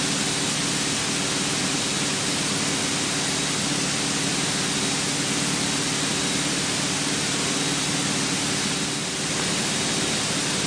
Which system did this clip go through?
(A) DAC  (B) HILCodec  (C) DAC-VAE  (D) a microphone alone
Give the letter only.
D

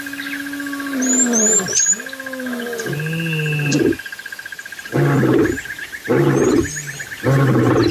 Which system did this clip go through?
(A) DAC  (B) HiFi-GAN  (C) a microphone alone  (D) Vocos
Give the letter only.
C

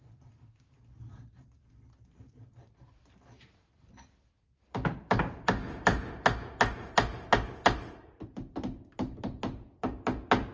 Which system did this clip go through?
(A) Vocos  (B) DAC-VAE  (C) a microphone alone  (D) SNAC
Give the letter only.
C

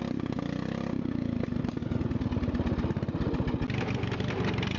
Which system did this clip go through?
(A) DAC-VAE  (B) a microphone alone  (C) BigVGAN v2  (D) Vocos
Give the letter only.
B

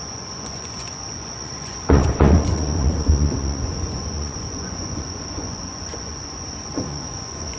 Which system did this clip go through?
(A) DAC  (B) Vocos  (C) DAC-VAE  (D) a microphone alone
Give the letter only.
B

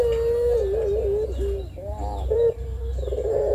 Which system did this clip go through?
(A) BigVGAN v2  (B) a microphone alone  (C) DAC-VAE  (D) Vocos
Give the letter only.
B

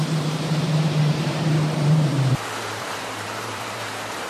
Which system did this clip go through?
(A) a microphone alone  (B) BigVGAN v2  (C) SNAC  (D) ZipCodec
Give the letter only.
B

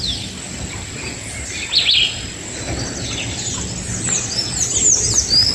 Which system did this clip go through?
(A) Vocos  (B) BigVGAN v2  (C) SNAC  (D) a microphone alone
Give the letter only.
D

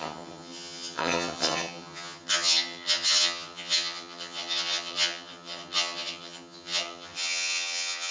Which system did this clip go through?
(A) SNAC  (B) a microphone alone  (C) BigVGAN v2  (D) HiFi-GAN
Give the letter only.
D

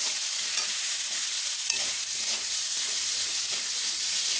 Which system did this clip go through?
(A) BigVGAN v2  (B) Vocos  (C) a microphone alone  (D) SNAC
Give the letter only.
B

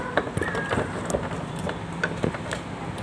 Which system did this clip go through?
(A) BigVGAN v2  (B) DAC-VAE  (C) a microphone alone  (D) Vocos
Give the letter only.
C